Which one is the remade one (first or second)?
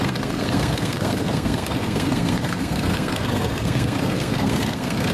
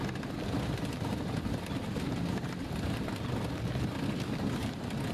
first